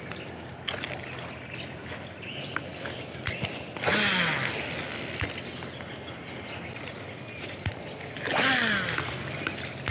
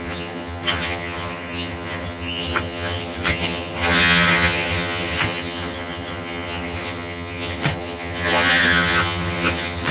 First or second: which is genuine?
first